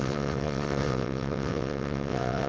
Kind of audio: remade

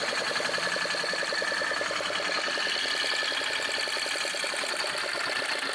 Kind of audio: recorded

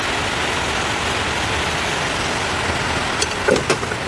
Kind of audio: recorded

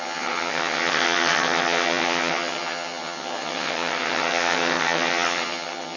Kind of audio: remade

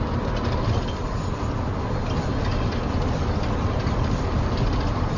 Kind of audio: recorded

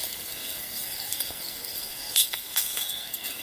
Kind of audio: remade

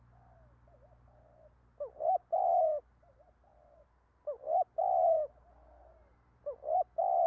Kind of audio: recorded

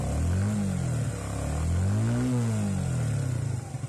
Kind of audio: recorded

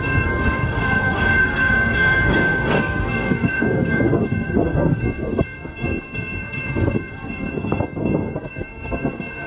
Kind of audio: remade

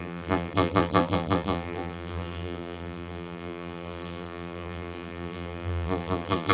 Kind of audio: remade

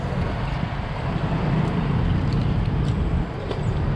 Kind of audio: recorded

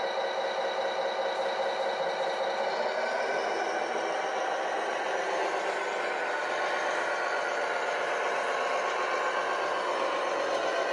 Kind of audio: recorded